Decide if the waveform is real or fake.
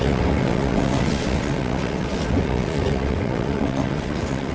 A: fake